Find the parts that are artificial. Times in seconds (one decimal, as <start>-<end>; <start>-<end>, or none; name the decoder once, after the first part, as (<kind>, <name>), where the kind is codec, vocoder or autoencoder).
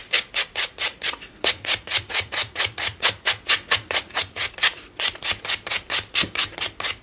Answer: 0.9-4.5 (vocoder, Vocos)